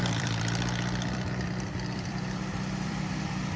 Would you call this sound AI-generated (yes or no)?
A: yes